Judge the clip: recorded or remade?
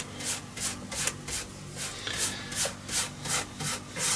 recorded